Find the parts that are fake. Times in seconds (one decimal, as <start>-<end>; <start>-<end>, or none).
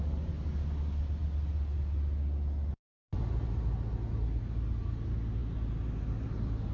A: none